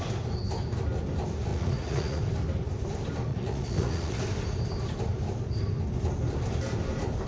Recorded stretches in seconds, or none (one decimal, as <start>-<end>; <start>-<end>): 0.0-1.5; 2.2-3.3; 4.2-7.3

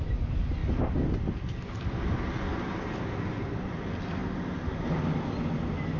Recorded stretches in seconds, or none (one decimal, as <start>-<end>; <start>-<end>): 0.0-6.0